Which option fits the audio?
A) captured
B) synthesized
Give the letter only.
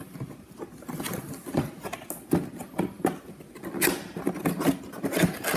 A